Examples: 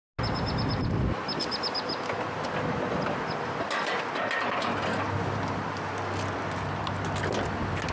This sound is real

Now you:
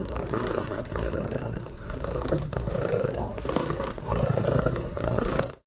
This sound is fake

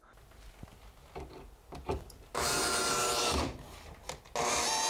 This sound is real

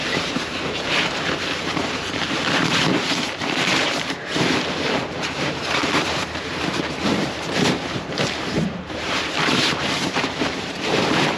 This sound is fake